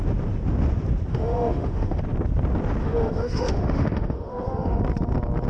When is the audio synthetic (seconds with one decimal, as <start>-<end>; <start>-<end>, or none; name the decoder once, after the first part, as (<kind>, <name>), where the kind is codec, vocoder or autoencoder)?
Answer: 1.1-2.0 (autoencoder, DAC-VAE); 2.8-4.8